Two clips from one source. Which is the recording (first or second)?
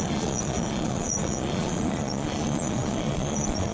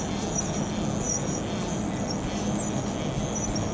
second